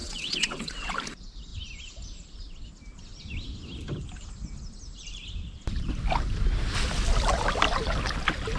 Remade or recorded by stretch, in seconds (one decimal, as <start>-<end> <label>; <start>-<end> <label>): 0.0-0.9 remade; 0.9-8.6 recorded